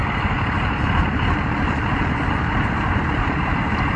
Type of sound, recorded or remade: remade